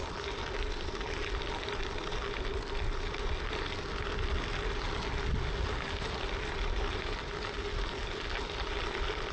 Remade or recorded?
recorded